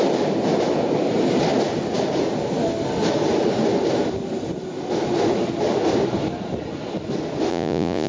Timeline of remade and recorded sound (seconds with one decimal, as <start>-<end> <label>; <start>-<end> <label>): 0.0-7.5 recorded; 7.5-8.1 remade